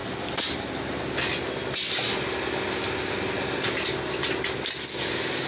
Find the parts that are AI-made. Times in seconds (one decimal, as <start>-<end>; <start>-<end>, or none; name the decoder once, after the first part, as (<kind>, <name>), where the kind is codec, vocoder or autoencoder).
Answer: none